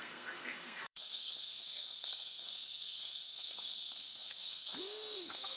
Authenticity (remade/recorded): remade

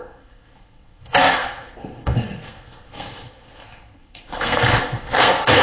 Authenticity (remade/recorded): remade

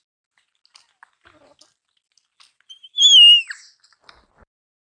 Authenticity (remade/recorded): recorded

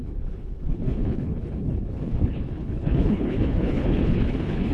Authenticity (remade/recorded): remade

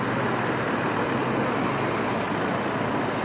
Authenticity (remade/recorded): recorded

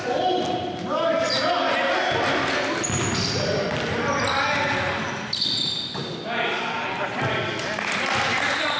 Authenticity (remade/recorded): recorded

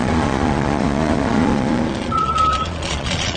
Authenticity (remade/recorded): remade